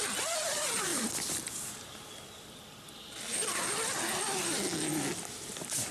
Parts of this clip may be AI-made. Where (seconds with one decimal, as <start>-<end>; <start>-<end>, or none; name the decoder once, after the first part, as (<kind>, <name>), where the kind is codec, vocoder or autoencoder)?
none